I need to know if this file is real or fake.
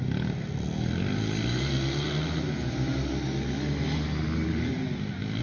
real